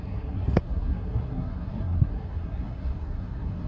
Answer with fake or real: fake